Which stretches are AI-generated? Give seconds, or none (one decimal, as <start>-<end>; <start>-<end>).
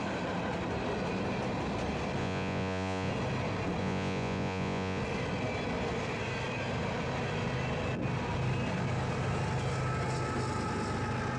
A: 2.2-3.1; 3.8-5.0